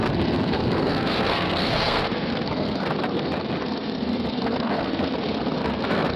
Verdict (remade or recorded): remade